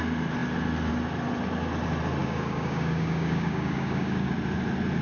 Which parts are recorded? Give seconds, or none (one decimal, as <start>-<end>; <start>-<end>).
0.0-2.2; 4.3-5.0